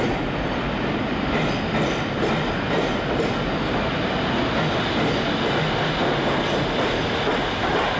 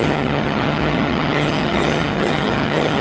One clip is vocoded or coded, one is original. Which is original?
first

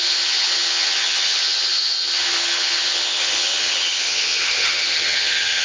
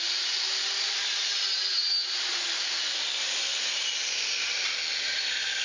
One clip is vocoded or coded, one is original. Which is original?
second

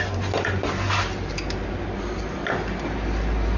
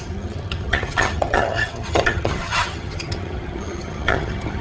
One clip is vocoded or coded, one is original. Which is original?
first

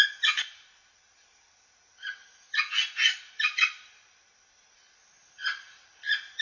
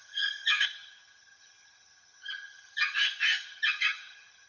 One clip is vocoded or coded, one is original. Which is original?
first